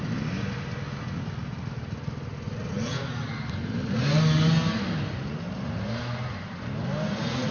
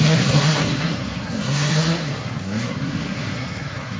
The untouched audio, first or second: first